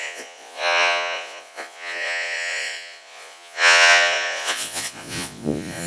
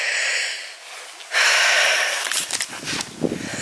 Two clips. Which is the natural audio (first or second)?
second